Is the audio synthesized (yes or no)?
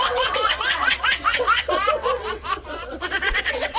yes